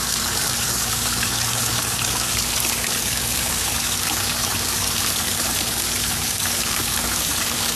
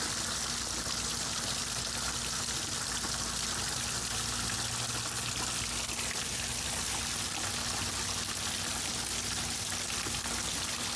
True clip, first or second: second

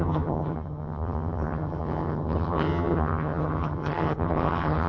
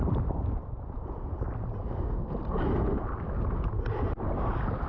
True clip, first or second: second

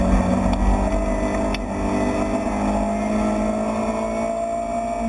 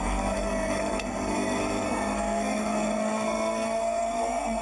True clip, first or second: first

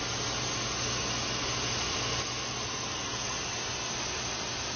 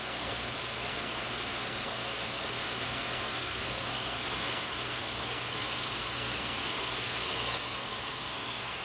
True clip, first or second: first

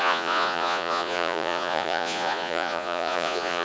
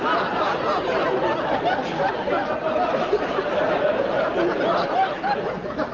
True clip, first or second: second